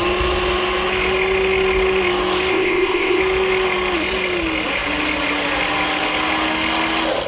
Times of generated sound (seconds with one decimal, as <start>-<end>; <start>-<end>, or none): 2.5-3.2